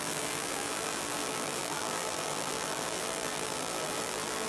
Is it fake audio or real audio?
fake